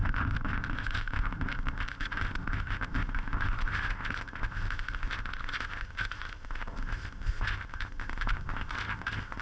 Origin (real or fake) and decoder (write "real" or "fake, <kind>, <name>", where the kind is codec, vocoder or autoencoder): fake, codec, ZipCodec